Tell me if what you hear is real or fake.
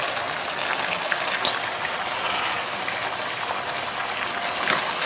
real